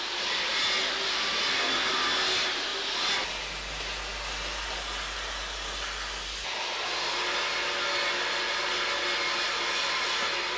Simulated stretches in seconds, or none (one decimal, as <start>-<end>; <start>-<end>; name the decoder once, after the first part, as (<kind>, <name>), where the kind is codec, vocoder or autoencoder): none